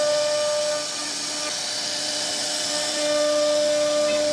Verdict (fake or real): real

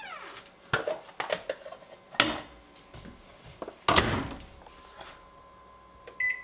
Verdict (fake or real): real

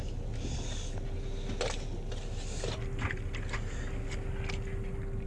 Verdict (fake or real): real